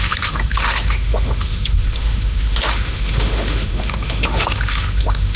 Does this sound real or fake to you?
fake